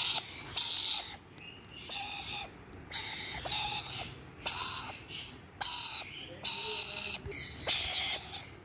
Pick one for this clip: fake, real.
real